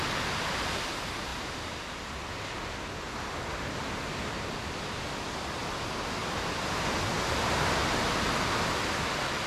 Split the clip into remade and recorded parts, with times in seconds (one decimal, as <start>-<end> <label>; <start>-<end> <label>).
0.0-9.5 recorded